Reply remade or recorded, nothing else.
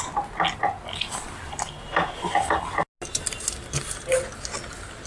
recorded